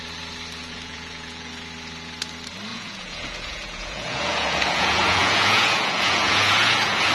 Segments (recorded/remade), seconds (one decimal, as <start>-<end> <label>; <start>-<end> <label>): 0.0-0.6 recorded; 0.6-1.5 remade; 1.5-2.7 recorded; 2.7-7.1 remade